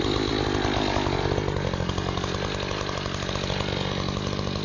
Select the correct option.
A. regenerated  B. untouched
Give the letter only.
B